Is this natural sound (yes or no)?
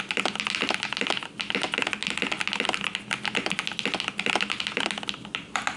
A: yes